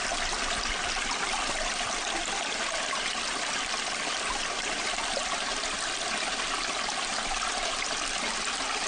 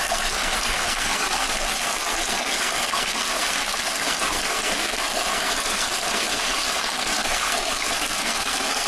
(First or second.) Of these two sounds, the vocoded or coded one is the second